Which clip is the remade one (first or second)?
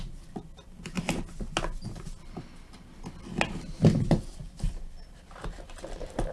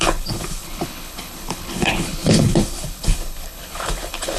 second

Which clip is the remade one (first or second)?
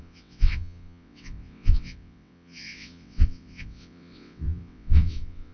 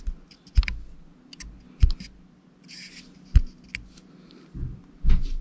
first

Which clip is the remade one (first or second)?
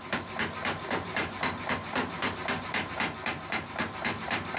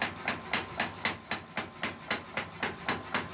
first